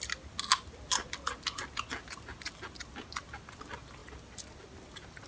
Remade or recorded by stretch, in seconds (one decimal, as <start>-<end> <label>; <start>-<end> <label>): 0.0-5.3 recorded